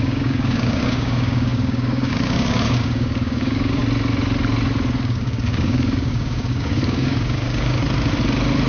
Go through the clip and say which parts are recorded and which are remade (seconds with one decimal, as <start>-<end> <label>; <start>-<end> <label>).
0.0-3.8 remade; 3.8-5.0 recorded; 5.0-7.8 remade; 7.8-8.7 recorded